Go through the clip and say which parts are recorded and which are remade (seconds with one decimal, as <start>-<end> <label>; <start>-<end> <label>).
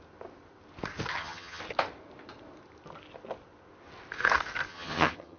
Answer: 0.0-1.1 recorded; 1.1-1.6 remade; 1.6-4.7 recorded; 4.7-5.4 remade